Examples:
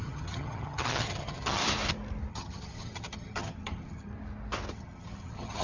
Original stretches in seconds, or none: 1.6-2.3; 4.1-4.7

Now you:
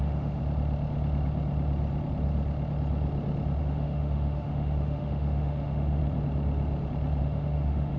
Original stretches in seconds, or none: 0.4-3.6; 6.0-7.2

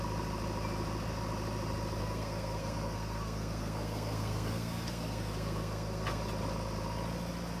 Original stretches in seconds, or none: 0.0-2.0; 6.2-7.6

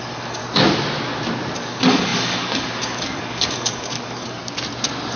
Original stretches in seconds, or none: 0.4-1.6; 4.4-5.2

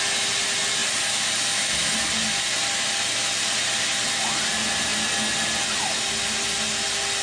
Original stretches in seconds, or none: 0.0-7.2

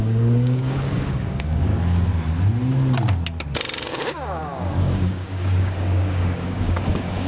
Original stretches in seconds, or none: 1.7-3.9